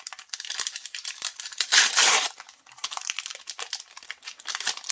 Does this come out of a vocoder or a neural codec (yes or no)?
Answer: no